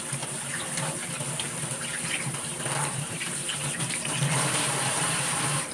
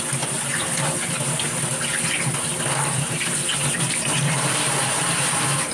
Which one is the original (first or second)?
second